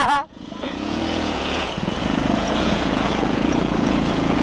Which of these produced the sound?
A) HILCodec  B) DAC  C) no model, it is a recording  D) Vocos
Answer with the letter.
D